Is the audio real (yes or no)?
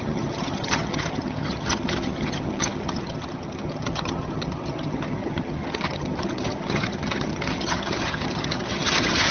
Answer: no